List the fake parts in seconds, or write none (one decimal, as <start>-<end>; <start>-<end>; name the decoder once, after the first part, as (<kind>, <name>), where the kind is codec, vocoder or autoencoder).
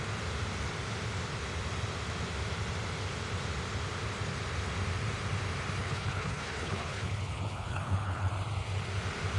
5.8-8.3 (codec, HILCodec)